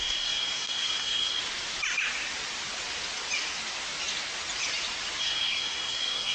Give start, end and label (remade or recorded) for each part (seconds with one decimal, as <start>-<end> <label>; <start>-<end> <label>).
0.0-1.4 remade; 1.4-5.2 recorded; 5.2-6.3 remade